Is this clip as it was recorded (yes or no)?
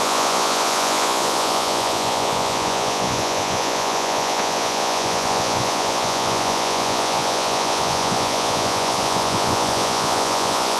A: no